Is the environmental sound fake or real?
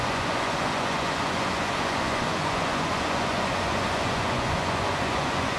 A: fake